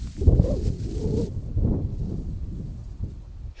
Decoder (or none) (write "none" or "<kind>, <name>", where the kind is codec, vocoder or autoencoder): none